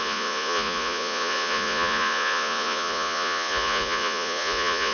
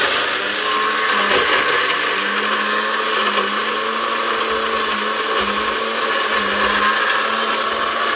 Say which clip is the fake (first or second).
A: first